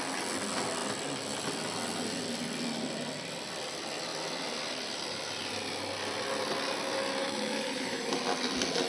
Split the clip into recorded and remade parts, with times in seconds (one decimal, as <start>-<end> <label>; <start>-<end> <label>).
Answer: 0.0-7.2 recorded; 7.2-8.2 remade; 8.2-8.9 recorded